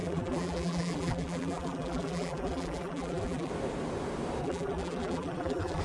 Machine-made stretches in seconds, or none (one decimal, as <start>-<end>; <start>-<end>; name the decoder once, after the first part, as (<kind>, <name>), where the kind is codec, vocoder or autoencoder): 0.0-3.5 (vocoder, BigVGAN v2); 4.4-5.8